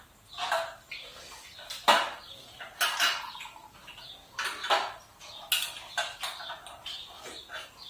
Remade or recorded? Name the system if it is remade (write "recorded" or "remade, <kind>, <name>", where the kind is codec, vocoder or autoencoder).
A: recorded